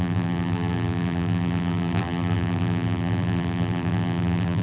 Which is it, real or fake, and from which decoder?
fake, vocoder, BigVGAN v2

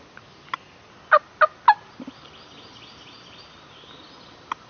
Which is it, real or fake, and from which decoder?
real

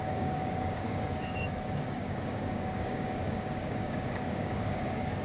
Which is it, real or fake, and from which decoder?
fake, codec, DAC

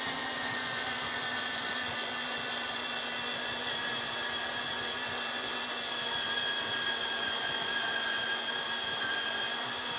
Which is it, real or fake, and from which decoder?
fake, vocoder, Vocos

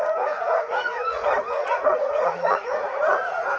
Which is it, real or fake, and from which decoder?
fake, vocoder, Vocos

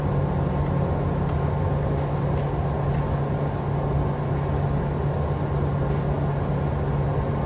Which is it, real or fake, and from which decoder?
real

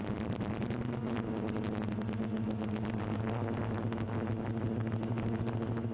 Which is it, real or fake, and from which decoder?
real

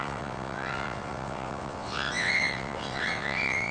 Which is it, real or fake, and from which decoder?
fake, vocoder, WaveNeXt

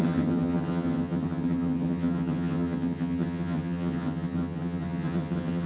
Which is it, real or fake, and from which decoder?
fake, vocoder, HiFi-GAN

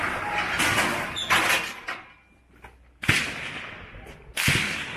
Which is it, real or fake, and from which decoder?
real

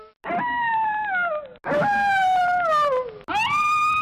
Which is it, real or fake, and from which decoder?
real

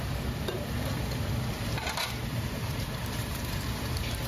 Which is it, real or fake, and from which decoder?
fake, vocoder, BigVGAN v2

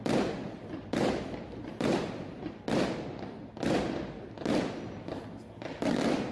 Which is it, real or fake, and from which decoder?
real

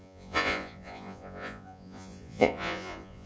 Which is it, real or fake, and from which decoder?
fake, vocoder, Vocos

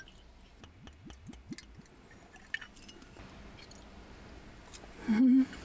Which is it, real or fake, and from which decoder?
real